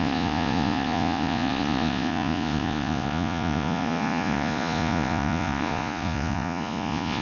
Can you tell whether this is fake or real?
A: fake